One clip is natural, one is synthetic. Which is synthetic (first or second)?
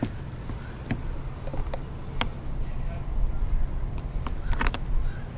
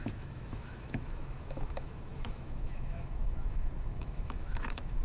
second